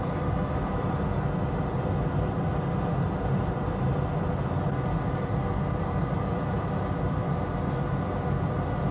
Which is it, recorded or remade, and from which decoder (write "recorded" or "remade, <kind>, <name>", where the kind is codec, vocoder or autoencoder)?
recorded